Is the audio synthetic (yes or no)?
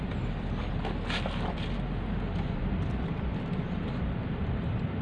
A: no